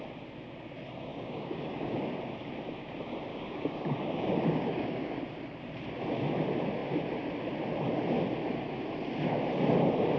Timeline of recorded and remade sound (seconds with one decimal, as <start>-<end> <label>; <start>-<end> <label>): 0.0-1.1 recorded; 1.1-2.1 remade; 2.1-3.3 recorded; 3.3-5.2 remade; 5.2-10.2 recorded

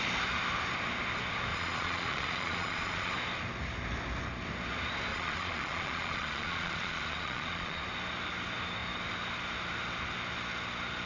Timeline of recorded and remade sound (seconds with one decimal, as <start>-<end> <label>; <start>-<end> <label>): 0.0-1.5 recorded; 1.5-3.1 remade; 3.1-5.1 recorded; 5.1-7.8 remade; 7.8-11.1 recorded

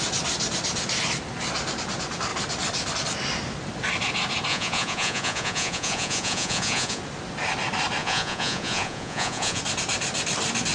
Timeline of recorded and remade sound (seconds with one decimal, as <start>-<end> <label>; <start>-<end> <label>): 0.0-4.5 recorded; 4.5-7.0 remade; 7.0-8.0 recorded; 8.0-9.6 remade; 9.6-10.7 recorded

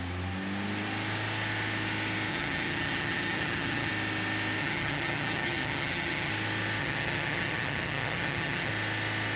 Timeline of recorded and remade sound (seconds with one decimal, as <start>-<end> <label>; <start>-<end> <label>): 0.0-2.3 recorded; 2.3-3.9 remade; 3.9-4.6 recorded; 4.6-6.3 remade; 6.3-6.8 recorded; 6.8-8.7 remade; 8.7-9.4 recorded

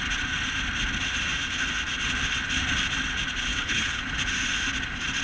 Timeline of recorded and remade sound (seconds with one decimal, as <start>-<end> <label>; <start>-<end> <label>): 0.0-3.5 recorded; 3.5-4.0 remade; 4.0-5.2 recorded

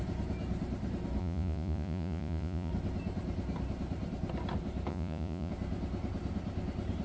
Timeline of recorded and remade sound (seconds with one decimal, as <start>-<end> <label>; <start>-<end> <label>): 0.0-1.2 recorded; 1.2-2.7 remade; 2.7-4.9 recorded; 4.9-5.5 remade; 5.5-7.0 recorded